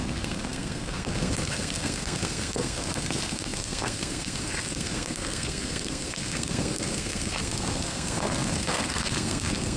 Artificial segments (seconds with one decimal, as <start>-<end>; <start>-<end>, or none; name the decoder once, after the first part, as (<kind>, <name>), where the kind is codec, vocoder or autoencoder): 0.0-9.8 (codec, SNAC)